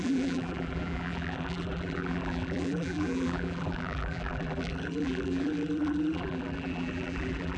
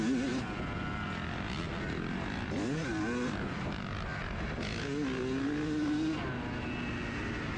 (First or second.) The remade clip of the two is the first